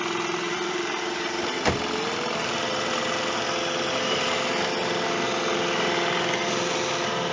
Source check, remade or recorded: recorded